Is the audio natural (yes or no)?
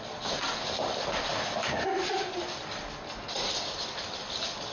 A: yes